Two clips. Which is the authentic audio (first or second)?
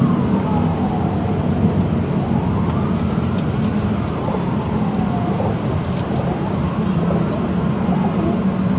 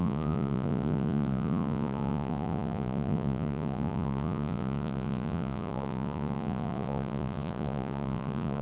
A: first